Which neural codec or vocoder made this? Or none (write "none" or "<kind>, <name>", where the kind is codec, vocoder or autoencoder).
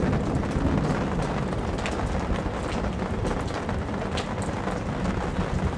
none